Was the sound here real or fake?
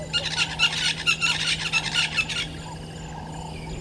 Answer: real